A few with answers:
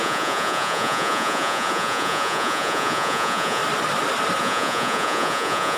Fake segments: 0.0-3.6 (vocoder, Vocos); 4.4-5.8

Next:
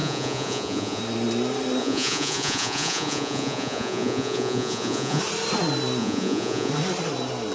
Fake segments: 0.0-1.0 (vocoder, Vocos); 1.8-5.2; 6.0-6.7

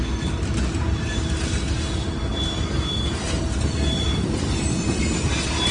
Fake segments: none

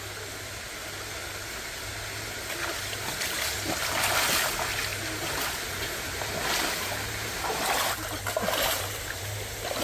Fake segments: none

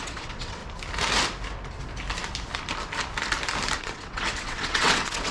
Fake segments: 0.0-0.6 (vocoder, WaveNeXt); 3.8-5.3

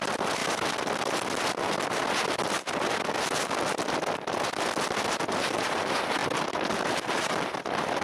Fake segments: 0.0-0.4 (vocoder, BigVGAN v2); 5.2-8.0

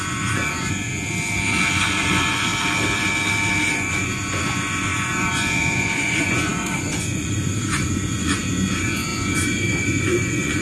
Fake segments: 0.0-0.9 (vocoder, Vocos); 1.7-2.5; 3.7-10.6